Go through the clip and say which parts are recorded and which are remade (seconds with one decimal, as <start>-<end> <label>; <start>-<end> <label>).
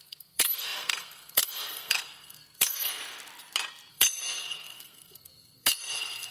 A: 0.0-3.0 remade; 3.0-3.9 recorded; 3.9-6.3 remade